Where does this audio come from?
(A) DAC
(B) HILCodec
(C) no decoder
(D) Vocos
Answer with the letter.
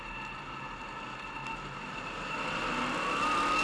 C